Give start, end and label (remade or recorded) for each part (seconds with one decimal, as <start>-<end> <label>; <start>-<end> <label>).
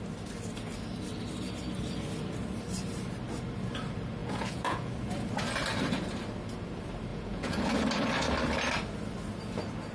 0.0-4.2 recorded; 4.2-4.9 remade; 4.9-7.1 recorded; 7.1-7.6 remade; 7.6-9.9 recorded